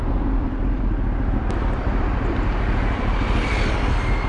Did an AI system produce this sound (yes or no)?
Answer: yes